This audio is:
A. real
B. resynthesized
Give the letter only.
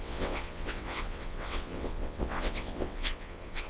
B